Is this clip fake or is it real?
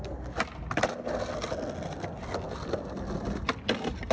real